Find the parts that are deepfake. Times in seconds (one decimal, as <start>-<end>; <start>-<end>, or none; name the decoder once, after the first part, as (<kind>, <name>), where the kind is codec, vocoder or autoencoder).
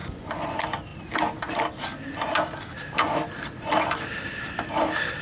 0.0-0.5 (vocoder, Vocos)